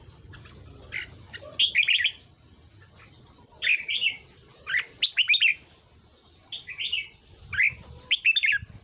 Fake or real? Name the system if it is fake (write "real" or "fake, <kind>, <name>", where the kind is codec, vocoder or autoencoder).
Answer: real